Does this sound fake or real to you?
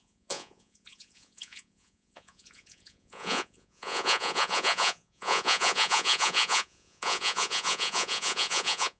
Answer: fake